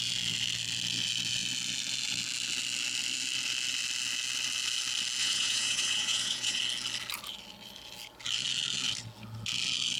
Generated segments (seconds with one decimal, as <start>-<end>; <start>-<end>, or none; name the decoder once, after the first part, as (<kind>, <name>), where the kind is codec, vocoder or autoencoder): 5.2-6.6 (vocoder, Vocos)